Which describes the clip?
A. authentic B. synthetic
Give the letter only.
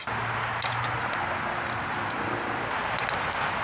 A